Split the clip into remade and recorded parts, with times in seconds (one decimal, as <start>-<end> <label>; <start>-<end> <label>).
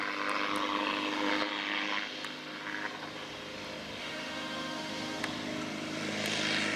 0.0-4.0 recorded; 4.0-5.2 remade; 5.2-6.8 recorded